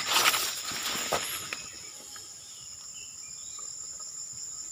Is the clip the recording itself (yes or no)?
yes